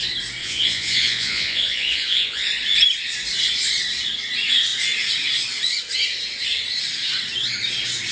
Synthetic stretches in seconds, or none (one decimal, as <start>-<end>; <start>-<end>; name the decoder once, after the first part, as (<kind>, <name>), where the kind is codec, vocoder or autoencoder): 0.4-2.5 (vocoder, Vocos)